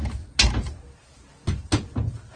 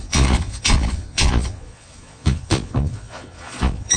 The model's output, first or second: second